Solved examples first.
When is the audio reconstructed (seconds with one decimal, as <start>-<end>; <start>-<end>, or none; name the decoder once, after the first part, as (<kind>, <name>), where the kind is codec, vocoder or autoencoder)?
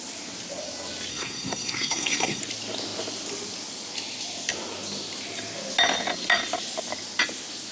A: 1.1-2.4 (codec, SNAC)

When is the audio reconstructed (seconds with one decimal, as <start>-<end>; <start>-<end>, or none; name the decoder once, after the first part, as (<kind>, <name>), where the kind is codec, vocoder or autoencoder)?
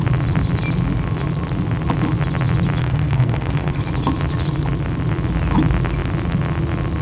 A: 2.8-3.8 (codec, SNAC)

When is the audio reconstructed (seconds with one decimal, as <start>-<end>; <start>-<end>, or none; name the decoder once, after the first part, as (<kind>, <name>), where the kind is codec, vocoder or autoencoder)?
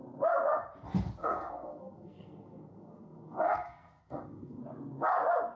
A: 1.2-4.6 (codec, SNAC)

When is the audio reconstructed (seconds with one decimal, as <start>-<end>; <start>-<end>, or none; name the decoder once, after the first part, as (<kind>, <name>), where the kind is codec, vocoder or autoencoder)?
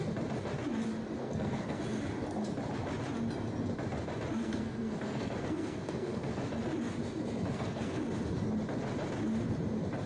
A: 1.2-1.8 (codec, SNAC); 4.4-6.4; 7.5-8.0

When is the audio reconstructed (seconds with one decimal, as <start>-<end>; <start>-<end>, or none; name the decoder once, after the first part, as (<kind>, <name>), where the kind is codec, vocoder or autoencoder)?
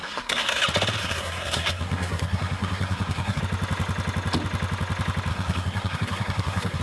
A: 0.0-0.6 (codec, SNAC); 1.0-3.4; 5.3-6.8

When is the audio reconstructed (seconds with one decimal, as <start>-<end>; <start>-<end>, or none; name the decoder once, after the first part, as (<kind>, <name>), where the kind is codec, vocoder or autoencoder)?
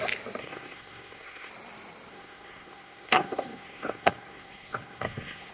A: 0.4-1.5 (codec, SNAC); 2.1-5.5